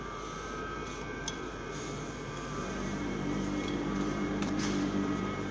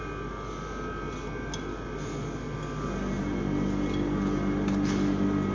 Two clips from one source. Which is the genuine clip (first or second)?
second